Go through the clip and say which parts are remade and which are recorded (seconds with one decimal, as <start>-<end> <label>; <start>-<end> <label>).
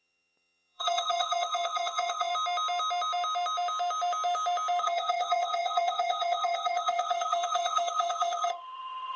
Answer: 0.0-2.3 remade; 2.3-4.8 recorded; 4.8-9.2 remade